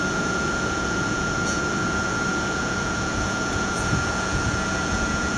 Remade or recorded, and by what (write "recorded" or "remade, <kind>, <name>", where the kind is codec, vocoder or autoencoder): remade, vocoder, Vocos